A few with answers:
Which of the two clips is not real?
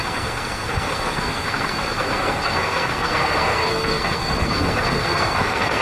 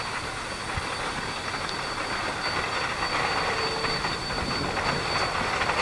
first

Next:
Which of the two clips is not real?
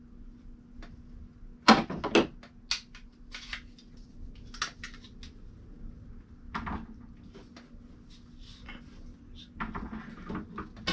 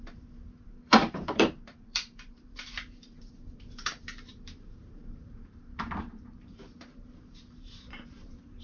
second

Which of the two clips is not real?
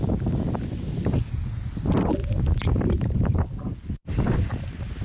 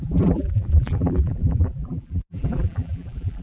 second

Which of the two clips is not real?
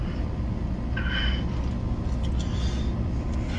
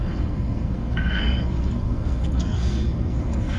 second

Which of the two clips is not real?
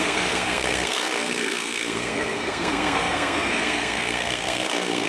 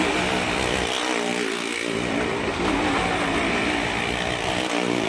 first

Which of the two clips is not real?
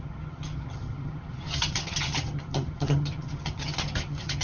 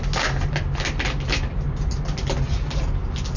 first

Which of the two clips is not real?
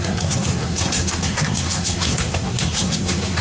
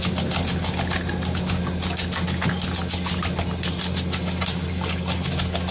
first